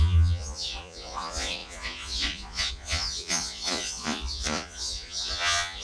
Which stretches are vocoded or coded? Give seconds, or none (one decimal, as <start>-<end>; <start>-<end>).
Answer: 0.0-5.8